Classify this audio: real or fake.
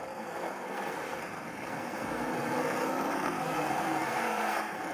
fake